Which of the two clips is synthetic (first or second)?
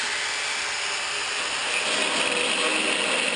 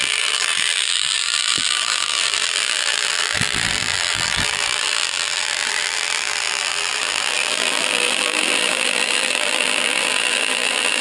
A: second